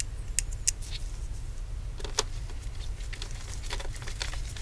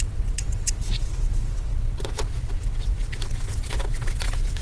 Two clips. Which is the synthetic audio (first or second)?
second